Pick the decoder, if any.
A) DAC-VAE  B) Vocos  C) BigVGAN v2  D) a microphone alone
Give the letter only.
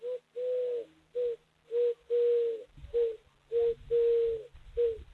D